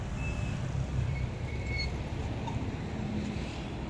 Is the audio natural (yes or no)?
no